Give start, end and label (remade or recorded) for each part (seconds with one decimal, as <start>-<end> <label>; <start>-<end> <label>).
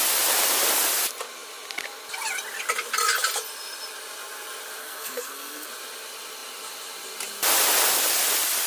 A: 0.0-4.8 recorded; 4.8-5.7 remade; 5.7-8.7 recorded